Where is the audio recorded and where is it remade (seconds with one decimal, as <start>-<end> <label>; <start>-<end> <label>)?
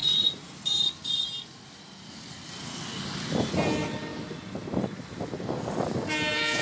0.0-0.6 remade; 0.6-6.6 recorded